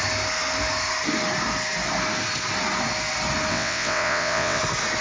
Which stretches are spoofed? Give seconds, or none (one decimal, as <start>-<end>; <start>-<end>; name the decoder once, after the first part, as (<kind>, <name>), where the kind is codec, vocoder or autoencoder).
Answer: 3.5-4.6 (vocoder, WaveNeXt)